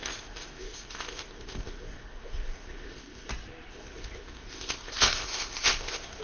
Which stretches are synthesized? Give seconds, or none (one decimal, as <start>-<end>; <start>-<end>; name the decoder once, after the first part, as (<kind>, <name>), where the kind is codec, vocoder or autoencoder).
0.0-3.3 (codec, ZipCodec); 3.7-6.2